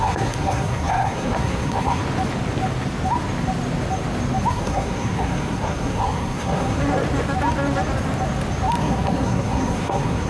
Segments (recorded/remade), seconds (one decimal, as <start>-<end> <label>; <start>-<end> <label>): 0.0-2.0 remade; 2.0-4.5 recorded; 4.5-6.8 remade; 6.8-8.8 recorded; 8.8-10.3 remade